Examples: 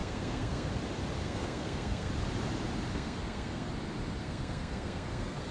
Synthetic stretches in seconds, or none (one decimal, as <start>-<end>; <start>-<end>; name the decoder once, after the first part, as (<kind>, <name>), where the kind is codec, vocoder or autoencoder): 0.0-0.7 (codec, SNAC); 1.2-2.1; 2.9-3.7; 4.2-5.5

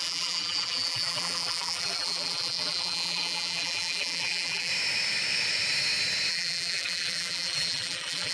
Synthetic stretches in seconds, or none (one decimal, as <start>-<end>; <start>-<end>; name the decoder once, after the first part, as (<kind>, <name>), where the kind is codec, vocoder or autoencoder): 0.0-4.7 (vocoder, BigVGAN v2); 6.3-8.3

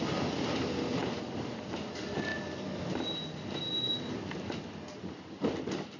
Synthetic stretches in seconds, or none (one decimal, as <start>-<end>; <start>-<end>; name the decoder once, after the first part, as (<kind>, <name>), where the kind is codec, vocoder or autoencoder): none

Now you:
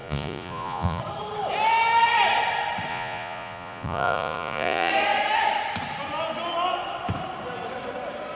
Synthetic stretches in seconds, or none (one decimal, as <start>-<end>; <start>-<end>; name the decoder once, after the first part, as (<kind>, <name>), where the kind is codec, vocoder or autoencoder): 0.0-1.0 (vocoder, Vocos); 2.9-4.9

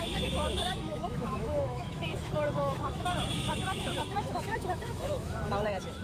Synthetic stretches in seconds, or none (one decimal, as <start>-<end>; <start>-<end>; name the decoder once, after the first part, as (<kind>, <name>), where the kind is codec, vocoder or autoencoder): 0.0-6.0 (autoencoder, DAC-VAE)

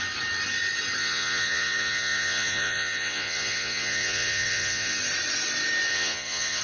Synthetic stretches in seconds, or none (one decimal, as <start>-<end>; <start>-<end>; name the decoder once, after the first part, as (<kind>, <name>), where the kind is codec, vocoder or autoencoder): 1.0-5.0 (vocoder, Vocos); 5.9-6.6